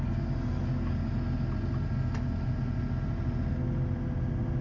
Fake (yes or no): no